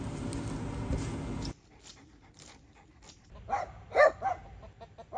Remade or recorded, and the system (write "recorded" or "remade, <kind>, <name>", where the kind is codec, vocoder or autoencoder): recorded